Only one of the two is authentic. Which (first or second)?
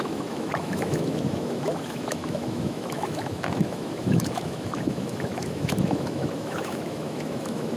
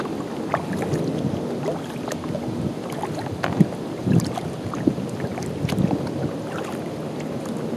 second